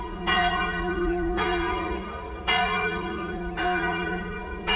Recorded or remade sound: remade